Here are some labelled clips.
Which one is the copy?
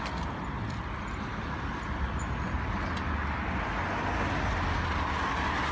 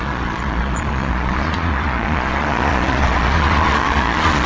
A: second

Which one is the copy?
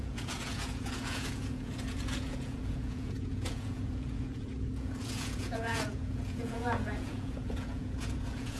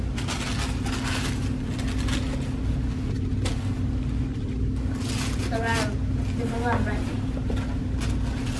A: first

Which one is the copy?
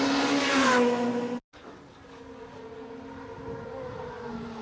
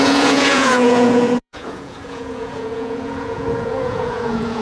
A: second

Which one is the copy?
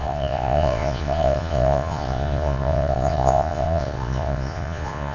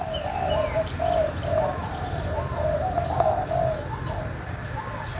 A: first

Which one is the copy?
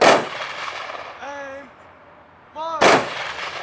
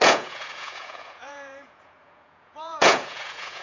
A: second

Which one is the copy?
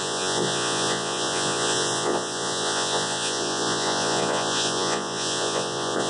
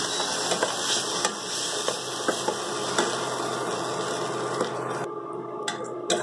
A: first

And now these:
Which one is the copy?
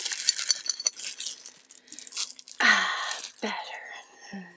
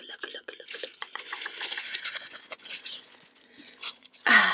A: second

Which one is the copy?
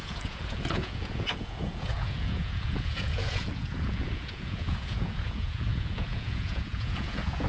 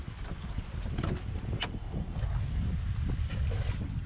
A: first